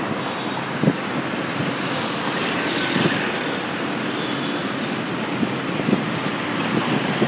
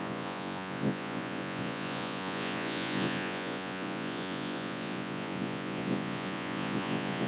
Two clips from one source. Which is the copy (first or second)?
second